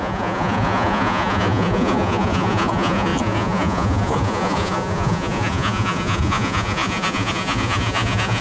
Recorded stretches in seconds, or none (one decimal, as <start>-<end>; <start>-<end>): none